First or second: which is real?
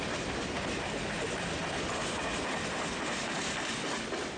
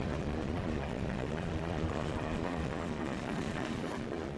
first